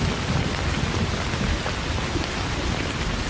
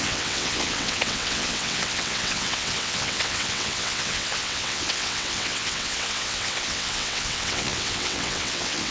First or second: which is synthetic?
second